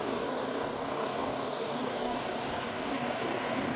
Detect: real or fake fake